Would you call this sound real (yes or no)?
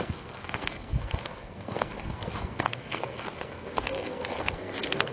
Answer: no